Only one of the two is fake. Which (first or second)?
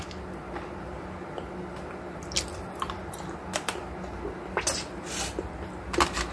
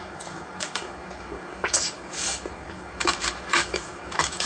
second